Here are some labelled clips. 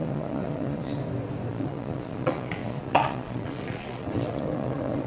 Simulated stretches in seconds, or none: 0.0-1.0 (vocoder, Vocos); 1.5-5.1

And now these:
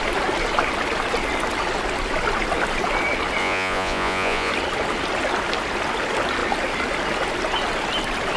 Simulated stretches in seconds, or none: 3.4-4.5 (vocoder, Vocos)

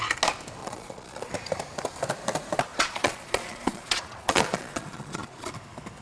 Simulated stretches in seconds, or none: 0.6-1.3 (vocoder, Vocos); 2.7-5.5

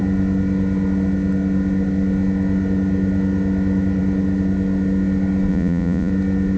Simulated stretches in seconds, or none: 5.5-6.1 (vocoder, Vocos)

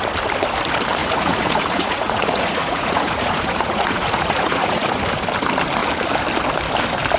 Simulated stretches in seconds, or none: 1.0-5.0 (vocoder, Vocos)

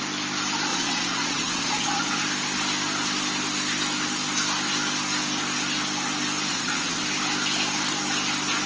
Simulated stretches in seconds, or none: 0.7-2.0 (vocoder, Vocos); 6.5-7.0

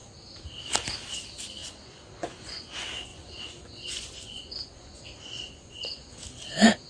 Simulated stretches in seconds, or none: 1.6-2.7 (vocoder, Vocos); 3.1-6.1